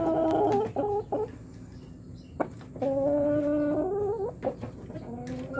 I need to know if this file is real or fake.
real